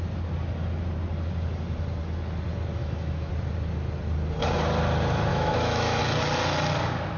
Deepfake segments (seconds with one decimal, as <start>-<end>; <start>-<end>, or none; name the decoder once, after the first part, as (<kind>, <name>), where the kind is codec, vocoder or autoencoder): 2.8-3.3 (autoencoder, DAC-VAE); 5.3-6.0